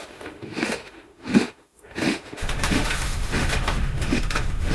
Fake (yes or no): yes